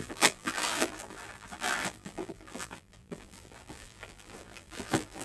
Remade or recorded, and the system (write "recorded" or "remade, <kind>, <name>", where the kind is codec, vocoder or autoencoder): remade, vocoder, BigVGAN v2